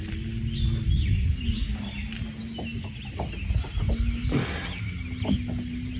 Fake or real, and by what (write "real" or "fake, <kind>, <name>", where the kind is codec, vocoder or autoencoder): real